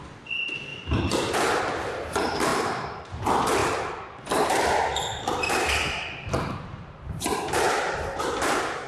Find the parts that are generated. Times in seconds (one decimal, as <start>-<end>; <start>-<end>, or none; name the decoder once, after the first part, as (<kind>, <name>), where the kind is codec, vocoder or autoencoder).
0.7-1.6 (vocoder, BigVGAN v2); 2.5-3.2; 3.6-8.2